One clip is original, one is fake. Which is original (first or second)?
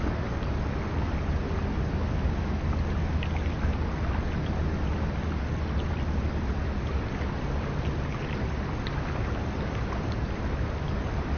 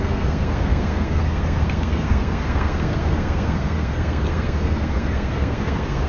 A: first